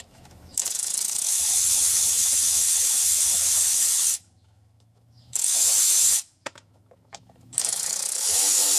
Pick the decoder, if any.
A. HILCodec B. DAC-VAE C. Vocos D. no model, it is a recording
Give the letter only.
B